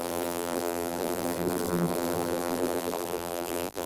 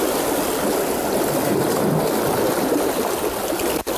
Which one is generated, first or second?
first